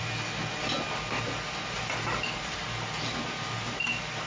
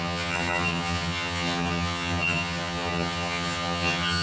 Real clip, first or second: first